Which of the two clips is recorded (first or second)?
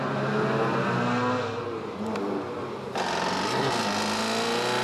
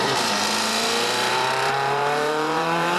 first